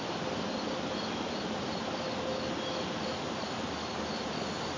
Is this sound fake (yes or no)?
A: no